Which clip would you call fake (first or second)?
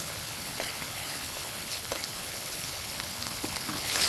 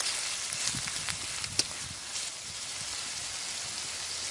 first